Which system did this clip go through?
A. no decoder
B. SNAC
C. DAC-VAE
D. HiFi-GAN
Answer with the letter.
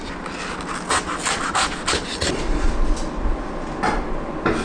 A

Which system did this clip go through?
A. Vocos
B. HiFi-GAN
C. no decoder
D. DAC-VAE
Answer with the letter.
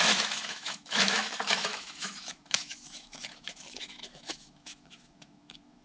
D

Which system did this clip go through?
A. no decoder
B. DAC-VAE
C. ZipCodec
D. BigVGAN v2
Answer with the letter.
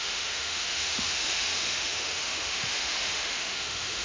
B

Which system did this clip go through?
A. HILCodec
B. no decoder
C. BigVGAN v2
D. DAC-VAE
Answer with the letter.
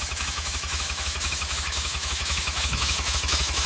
D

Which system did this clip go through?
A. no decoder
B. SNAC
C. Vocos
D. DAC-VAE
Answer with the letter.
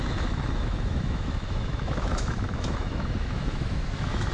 D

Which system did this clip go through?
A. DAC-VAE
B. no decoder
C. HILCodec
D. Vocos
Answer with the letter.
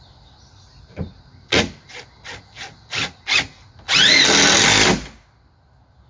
B